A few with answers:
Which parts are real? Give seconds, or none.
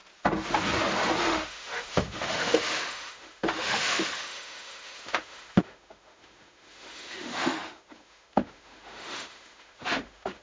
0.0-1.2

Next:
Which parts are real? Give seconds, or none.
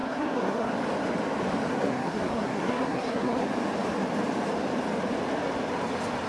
0.7-1.7; 3.4-6.3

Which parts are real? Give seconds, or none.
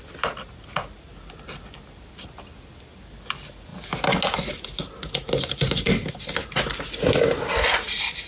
0.0-8.3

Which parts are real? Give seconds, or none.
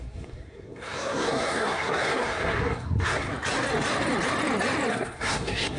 3.3-4.9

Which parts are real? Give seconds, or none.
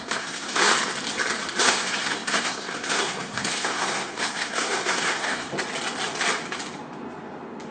0.7-1.6; 5.5-7.7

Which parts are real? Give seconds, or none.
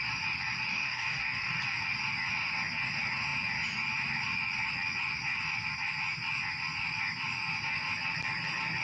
0.0-0.7; 1.6-8.8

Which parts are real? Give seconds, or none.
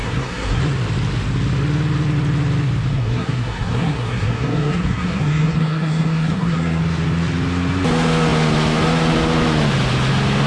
0.6-2.9; 6.8-10.5